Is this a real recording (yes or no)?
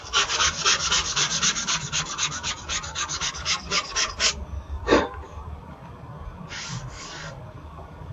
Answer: no